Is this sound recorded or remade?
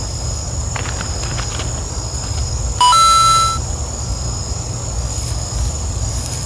recorded